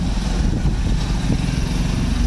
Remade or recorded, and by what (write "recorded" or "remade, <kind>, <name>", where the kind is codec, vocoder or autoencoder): recorded